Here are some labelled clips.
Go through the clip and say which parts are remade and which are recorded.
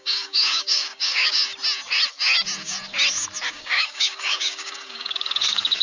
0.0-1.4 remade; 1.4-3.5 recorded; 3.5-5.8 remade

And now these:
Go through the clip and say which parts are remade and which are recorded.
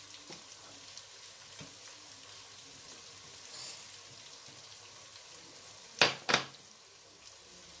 0.0-7.8 recorded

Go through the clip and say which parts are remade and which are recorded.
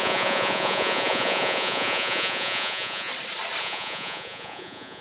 0.0-3.1 remade; 3.1-3.6 recorded; 3.6-5.0 remade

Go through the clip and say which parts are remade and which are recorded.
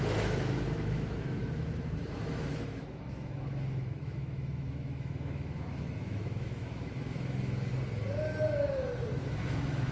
0.0-7.7 remade; 7.7-9.2 recorded; 9.2-9.9 remade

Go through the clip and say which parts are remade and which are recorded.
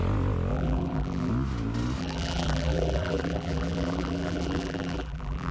0.0-0.5 recorded; 0.5-1.3 remade; 1.3-2.0 recorded; 2.0-5.5 remade